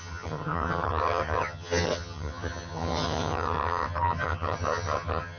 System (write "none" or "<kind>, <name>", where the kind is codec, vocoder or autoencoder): vocoder, HiFi-GAN